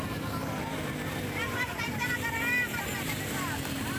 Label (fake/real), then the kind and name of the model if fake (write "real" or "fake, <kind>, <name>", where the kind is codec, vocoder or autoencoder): fake, vocoder, BigVGAN v2